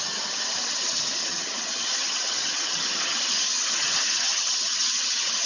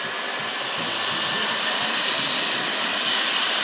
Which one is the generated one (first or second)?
first